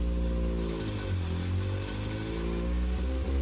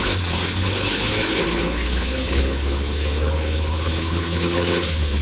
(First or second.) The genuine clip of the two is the first